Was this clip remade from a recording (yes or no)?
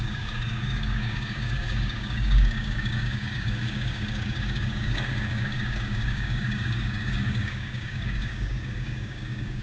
yes